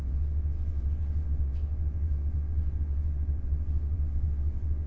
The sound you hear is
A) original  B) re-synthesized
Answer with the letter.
B